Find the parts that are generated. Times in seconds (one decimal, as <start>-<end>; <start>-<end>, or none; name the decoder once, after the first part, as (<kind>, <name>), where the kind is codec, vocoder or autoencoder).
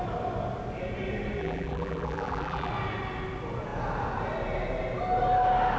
1.4-2.7 (vocoder, BigVGAN v2)